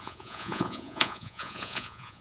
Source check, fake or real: fake